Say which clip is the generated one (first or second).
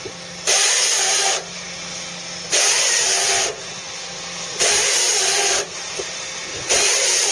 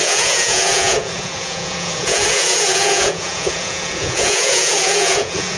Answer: second